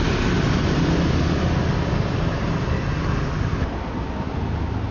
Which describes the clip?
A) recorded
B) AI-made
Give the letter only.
A